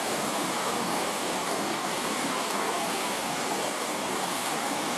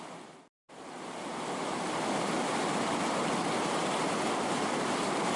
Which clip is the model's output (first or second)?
first